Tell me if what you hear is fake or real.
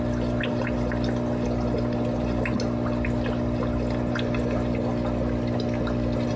real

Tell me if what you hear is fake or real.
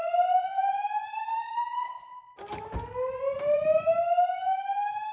real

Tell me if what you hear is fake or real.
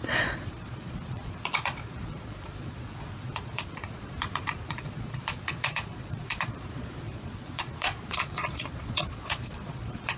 fake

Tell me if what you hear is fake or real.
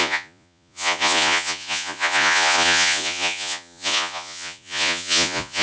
fake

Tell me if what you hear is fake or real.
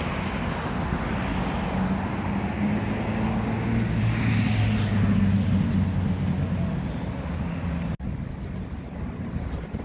real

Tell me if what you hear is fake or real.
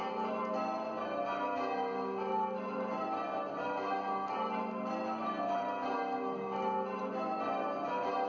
real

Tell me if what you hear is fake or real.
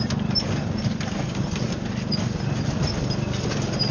real